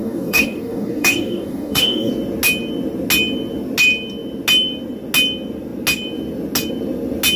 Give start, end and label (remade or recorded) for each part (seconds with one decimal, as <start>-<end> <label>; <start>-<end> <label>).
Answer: 0.0-2.1 remade; 2.1-7.4 recorded